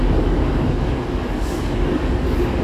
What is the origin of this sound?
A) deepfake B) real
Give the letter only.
A